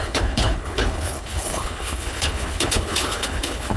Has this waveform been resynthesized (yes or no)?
yes